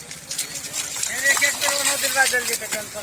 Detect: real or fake real